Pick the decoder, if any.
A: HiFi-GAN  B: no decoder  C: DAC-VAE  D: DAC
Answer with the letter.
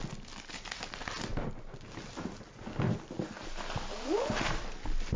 B